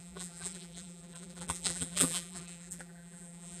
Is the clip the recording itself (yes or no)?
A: no